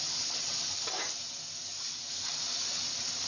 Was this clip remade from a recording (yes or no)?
no